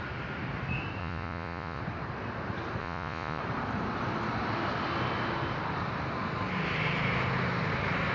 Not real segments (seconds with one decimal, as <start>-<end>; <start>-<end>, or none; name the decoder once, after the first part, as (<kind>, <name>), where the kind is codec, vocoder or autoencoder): 1.0-1.8 (vocoder, Vocos); 2.8-3.4